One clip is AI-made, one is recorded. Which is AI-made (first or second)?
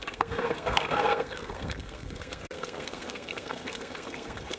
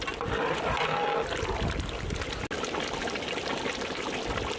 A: first